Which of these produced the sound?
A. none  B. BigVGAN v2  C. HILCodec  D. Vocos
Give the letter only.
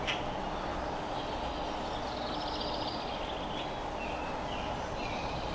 A